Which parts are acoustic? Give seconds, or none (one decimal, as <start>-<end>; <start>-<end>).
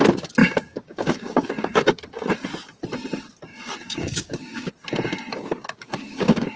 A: 0.0-0.4; 2.0-3.5; 4.7-5.3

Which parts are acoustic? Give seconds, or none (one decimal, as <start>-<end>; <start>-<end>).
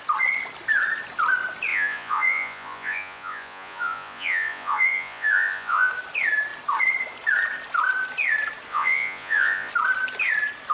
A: 0.0-1.7; 5.9-8.7; 9.7-10.7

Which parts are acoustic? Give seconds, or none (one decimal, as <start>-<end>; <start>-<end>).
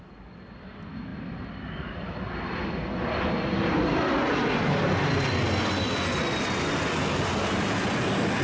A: 0.0-8.4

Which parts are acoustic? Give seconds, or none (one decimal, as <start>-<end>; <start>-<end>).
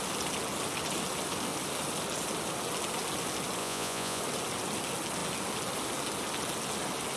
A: 0.0-3.6; 4.2-7.2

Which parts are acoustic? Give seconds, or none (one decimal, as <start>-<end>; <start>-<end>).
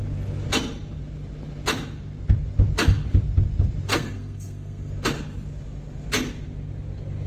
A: 0.0-3.9; 4.9-7.3